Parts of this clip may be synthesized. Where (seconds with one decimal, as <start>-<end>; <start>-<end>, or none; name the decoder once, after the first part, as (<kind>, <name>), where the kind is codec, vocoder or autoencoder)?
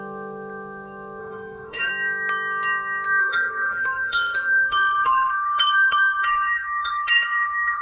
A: 1.2-1.9 (autoencoder, DAC-VAE); 3.2-7.8